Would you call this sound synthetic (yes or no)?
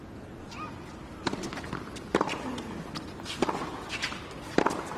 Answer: no